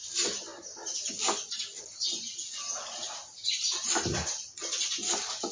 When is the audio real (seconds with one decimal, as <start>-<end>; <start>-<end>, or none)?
0.5-3.8